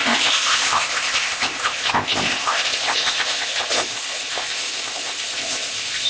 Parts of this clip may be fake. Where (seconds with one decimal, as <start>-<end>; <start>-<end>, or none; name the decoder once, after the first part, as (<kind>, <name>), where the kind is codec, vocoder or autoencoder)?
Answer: 0.0-6.1 (codec, ZipCodec)